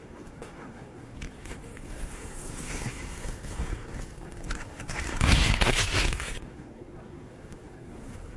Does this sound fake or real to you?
fake